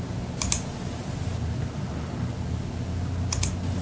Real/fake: real